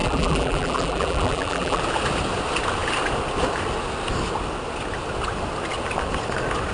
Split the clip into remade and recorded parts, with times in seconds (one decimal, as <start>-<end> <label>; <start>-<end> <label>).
0.0-1.8 remade; 1.8-6.7 recorded